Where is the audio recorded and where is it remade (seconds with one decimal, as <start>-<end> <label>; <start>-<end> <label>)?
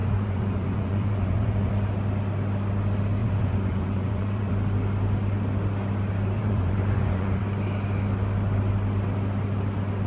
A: 0.0-1.7 remade; 1.7-3.2 recorded; 3.2-4.5 remade; 4.5-6.4 recorded; 6.4-7.4 remade; 7.4-10.1 recorded